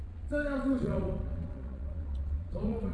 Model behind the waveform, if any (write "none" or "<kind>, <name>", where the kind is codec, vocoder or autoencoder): vocoder, Vocos